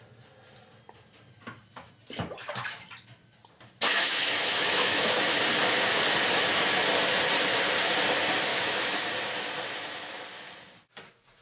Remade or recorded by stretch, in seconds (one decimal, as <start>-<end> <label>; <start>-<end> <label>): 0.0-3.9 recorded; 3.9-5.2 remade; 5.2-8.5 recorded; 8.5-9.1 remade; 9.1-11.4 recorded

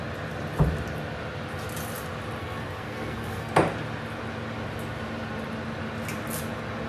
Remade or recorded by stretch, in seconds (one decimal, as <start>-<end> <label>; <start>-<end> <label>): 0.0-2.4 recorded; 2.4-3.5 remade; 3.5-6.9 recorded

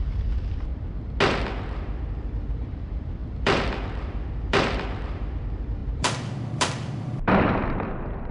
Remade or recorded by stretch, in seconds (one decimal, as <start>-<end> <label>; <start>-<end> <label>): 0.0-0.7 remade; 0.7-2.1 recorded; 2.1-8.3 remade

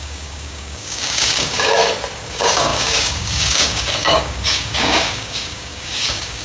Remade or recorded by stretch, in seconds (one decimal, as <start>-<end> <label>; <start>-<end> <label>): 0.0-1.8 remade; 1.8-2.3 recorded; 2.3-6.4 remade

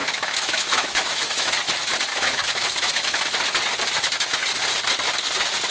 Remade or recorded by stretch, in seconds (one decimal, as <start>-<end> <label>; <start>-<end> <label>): 0.0-1.7 remade; 1.7-2.1 recorded; 2.1-3.2 remade; 3.2-5.7 recorded